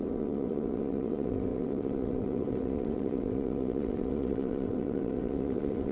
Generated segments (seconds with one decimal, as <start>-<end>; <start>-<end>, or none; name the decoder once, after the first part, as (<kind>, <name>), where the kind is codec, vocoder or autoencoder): 0.0-5.9 (vocoder, WaveNeXt)